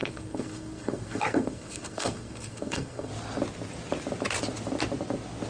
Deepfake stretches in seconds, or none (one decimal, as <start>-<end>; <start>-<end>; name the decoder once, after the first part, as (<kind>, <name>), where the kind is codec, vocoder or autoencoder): 0.0-3.1 (codec, SNAC)